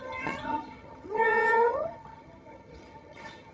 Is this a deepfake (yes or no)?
yes